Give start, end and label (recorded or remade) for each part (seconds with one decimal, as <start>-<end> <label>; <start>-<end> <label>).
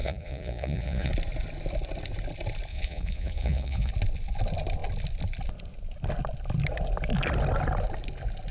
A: 0.0-1.1 remade; 1.1-2.7 recorded; 2.7-3.9 remade; 3.9-8.5 recorded